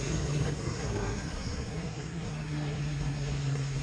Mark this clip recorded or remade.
remade